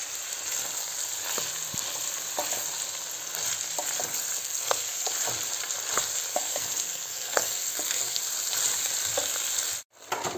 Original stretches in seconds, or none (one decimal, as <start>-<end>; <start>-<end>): 0.0-4.4; 5.1-6.3; 8.2-10.4

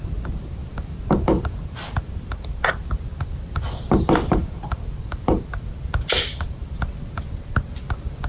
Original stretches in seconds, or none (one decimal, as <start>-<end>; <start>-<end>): 0.0-8.3